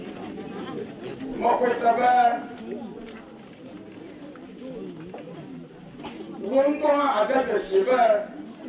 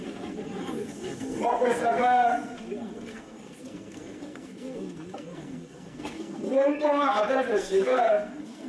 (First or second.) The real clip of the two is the first